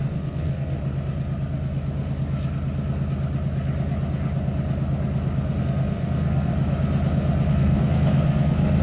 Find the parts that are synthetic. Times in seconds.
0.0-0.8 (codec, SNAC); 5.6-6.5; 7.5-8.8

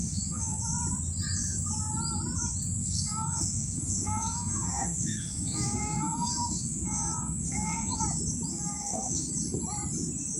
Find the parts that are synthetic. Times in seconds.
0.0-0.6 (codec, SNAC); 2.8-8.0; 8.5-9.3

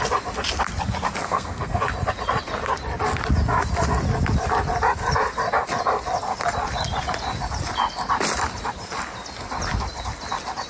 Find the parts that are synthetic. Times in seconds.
1.2-1.8 (codec, SNAC)